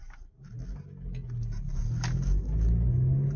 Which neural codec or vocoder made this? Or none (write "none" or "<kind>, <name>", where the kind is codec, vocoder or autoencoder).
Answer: none